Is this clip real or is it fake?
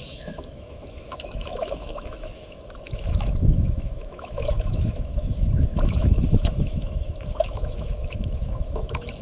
fake